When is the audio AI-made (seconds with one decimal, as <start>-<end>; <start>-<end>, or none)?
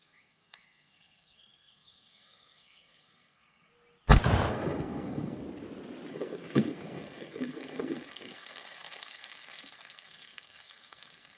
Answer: 0.0-3.7; 4.5-5.4; 6.1-11.4